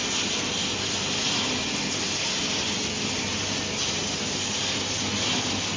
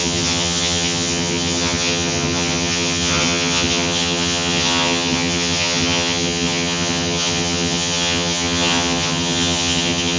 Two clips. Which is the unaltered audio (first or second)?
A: first